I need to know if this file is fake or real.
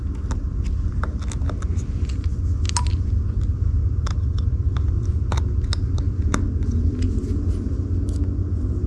real